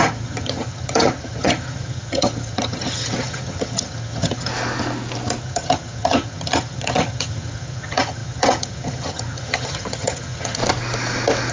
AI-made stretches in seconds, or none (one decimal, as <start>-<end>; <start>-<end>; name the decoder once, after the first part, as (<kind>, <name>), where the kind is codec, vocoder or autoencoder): 0.0-4.5 (vocoder, HiFi-GAN); 5.4-10.6

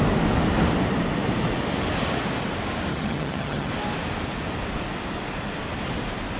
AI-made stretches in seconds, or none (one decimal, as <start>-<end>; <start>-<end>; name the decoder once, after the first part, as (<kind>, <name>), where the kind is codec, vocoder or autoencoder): 2.9-3.7 (vocoder, HiFi-GAN)